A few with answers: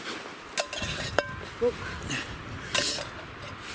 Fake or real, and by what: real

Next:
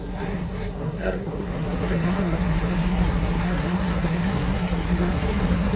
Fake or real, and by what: fake, codec, SNAC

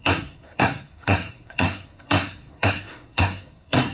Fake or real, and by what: fake, codec, SNAC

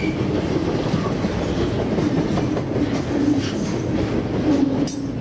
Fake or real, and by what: real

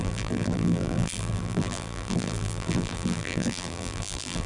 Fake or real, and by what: fake, vocoder, BigVGAN v2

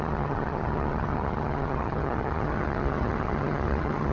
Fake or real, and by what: fake, vocoder, HiFi-GAN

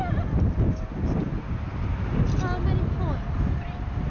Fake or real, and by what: real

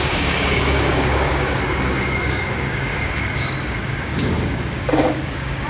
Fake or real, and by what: fake, codec, DAC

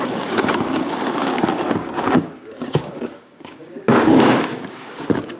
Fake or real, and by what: fake, codec, DAC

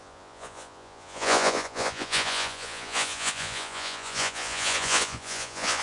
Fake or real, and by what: fake, vocoder, Vocos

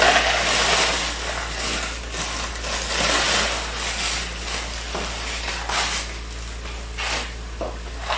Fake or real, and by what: real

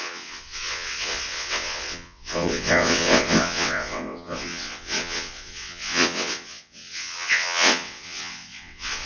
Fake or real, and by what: fake, vocoder, WaveNeXt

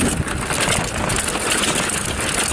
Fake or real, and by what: real